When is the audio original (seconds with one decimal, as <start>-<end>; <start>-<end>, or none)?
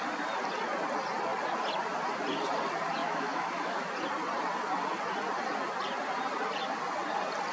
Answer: 0.0-3.0; 3.9-7.5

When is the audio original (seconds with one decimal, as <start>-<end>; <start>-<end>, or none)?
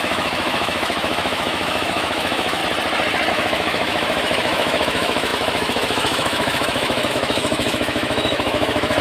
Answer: 2.6-3.3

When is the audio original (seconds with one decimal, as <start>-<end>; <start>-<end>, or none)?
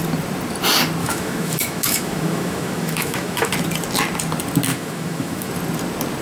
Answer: 0.0-1.0; 3.5-4.7; 5.5-6.2